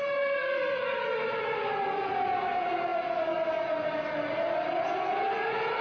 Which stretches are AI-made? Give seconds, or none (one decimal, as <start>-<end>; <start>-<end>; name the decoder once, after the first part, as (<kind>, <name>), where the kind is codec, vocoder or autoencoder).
none